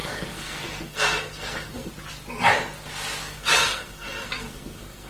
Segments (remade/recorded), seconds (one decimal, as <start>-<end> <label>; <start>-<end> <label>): 0.0-1.9 remade; 1.9-3.2 recorded; 3.2-5.1 remade